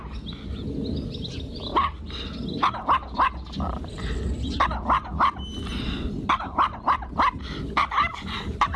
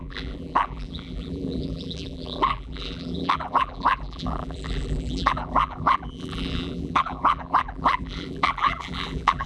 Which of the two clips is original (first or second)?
first